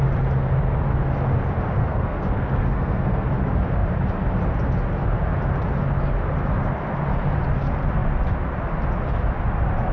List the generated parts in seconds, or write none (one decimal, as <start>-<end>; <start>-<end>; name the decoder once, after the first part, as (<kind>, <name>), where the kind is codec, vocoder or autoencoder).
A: 1.8-3.3 (codec, SNAC)

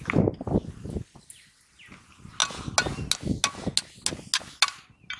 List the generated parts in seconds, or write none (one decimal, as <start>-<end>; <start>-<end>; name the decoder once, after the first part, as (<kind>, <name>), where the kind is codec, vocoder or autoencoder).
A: none